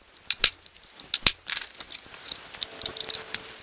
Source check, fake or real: real